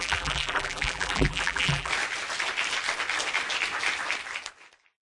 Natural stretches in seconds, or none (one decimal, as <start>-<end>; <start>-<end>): 1.9-5.0